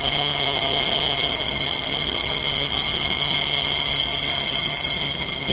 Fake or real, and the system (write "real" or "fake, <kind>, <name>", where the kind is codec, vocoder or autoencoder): fake, vocoder, HiFi-GAN